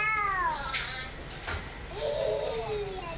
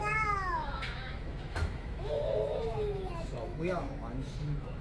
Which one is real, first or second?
first